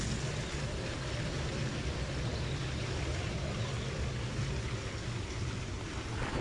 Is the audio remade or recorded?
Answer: recorded